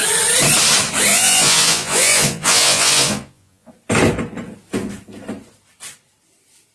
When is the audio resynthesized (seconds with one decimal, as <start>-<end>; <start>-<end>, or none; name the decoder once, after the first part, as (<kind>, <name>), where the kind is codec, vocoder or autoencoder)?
1.1-3.7 (vocoder, Vocos)